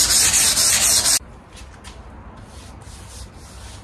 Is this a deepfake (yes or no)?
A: no